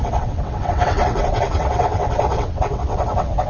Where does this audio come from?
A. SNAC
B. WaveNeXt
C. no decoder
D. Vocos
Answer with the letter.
B